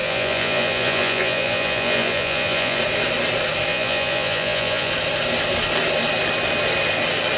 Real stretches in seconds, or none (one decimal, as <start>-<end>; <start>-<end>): 2.8-3.7; 4.9-7.4